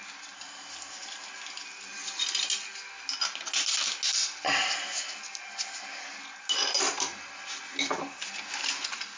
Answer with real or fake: real